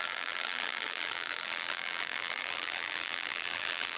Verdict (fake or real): fake